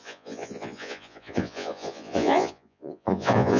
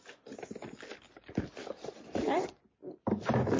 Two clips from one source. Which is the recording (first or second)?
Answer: second